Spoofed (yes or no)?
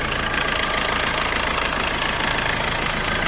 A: no